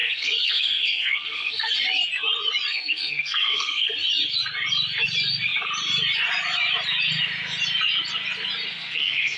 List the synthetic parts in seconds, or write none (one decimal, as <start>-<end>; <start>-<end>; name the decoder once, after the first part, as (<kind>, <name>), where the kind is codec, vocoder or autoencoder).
0.0-1.7 (codec, SNAC); 2.7-3.9; 8.7-9.4